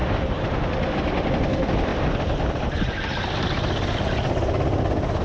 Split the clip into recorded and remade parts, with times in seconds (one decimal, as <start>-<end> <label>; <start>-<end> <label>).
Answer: 0.0-5.2 recorded